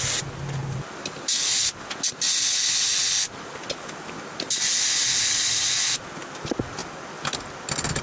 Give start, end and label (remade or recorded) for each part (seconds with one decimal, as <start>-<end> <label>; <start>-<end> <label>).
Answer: 0.0-8.0 recorded